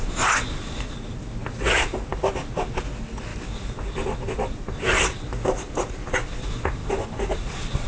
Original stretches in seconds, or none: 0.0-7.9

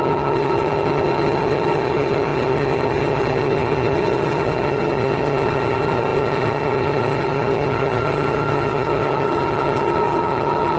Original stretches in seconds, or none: none

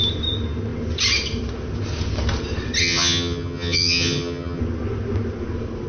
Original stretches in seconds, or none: 0.0-2.8; 4.6-5.9

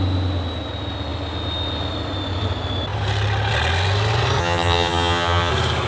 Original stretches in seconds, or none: 0.0-4.4; 5.5-5.9

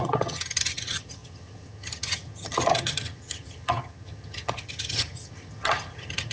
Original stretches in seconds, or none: none